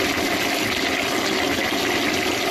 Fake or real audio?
real